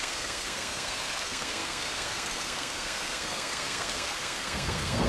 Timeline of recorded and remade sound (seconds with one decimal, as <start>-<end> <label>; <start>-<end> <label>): 0.0-5.1 remade